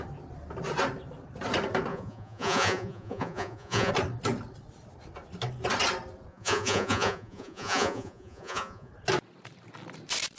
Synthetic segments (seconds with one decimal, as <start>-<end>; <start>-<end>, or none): 1.9-3.9; 6.3-8.9